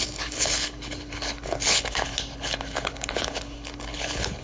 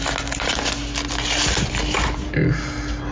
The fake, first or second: first